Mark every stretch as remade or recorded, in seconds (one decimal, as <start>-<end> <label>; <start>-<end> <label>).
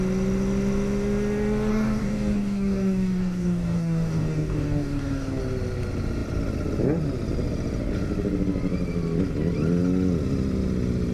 0.0-1.7 recorded; 1.7-5.4 remade; 5.4-11.1 recorded